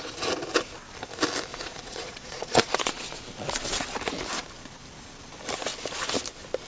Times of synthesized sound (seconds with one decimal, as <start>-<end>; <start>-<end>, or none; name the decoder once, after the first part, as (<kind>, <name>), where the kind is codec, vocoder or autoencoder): 1.5-3.2 (vocoder, Vocos)